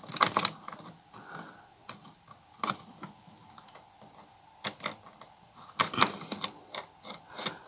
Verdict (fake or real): real